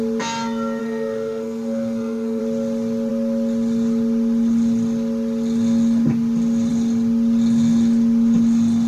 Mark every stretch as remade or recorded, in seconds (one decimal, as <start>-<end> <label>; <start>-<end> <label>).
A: 0.0-0.8 recorded; 0.8-2.4 remade; 2.4-8.9 recorded